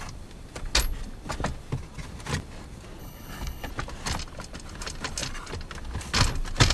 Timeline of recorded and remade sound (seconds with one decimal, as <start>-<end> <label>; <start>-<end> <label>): 0.0-3.0 recorded; 3.0-3.7 remade; 3.7-6.7 recorded